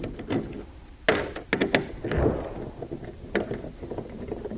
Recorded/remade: recorded